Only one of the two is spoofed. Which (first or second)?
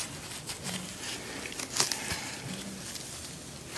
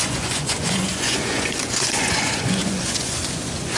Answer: second